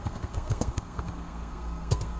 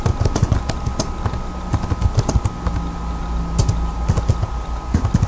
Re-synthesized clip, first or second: first